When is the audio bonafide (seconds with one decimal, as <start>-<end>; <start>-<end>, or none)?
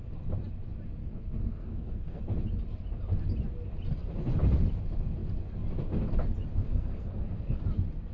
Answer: 0.0-1.0; 2.2-6.5; 7.6-8.1